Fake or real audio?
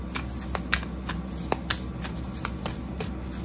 real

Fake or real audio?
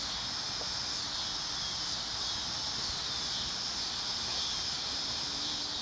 real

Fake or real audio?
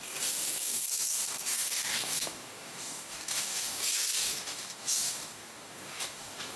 fake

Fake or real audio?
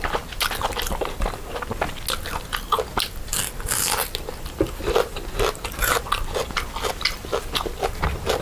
real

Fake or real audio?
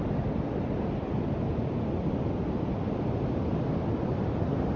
real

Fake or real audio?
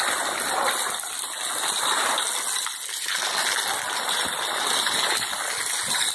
real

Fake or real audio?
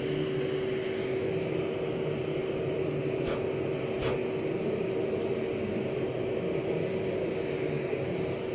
real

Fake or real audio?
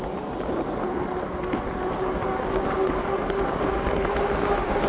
real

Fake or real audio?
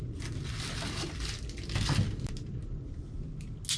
real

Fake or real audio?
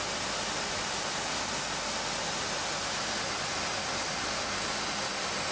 real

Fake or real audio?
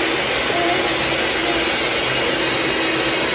real